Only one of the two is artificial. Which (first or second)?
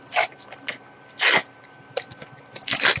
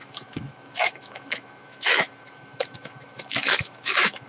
second